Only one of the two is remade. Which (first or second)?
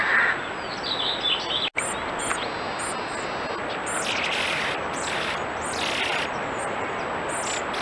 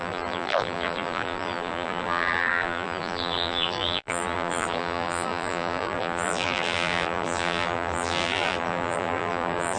second